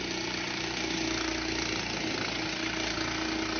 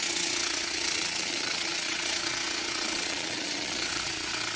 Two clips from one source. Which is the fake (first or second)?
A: second